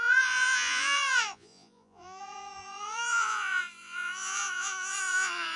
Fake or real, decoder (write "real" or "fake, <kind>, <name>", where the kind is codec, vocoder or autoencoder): fake, vocoder, Vocos